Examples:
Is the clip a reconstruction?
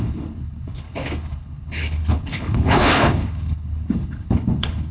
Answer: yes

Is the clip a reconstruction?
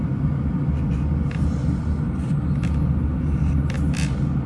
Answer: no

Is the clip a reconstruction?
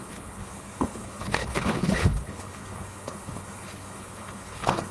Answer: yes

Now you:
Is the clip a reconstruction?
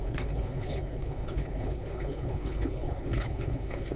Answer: yes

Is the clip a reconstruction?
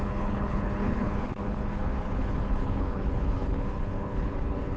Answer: yes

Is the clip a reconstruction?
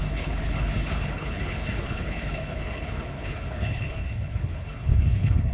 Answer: yes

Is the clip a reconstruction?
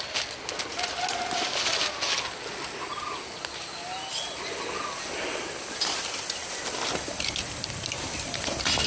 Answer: no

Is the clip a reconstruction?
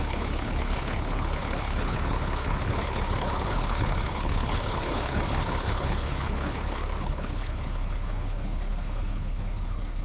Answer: yes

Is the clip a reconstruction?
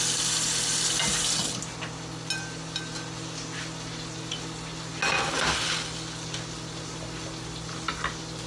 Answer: no